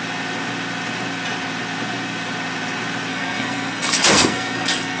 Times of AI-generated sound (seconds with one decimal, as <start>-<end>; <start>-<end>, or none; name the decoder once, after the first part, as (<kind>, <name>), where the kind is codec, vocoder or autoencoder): 3.1-5.0 (codec, SNAC)